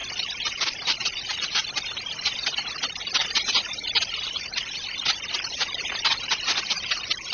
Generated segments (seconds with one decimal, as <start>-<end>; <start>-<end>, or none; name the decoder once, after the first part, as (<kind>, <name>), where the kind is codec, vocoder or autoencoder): none